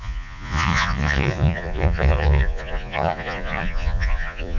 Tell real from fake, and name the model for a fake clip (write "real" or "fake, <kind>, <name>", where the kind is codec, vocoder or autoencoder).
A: fake, vocoder, Vocos